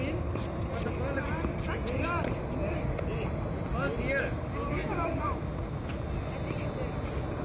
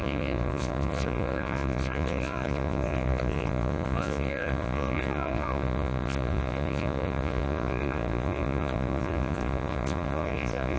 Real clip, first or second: first